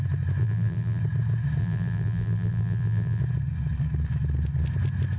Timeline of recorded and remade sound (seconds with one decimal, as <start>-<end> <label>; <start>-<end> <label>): 0.0-0.4 recorded; 0.4-1.0 remade; 1.0-1.6 recorded; 1.6-3.2 remade; 3.2-5.2 recorded